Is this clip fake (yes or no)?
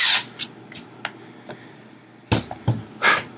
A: no